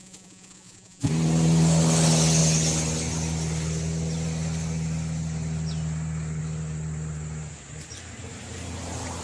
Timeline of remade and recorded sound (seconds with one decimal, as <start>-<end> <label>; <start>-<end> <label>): 0.0-1.1 remade; 1.1-9.2 recorded